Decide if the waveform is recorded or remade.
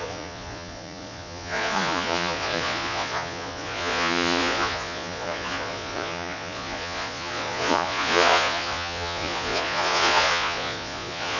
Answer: remade